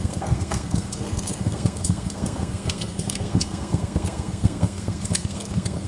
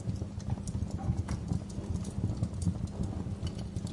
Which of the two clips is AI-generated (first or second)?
first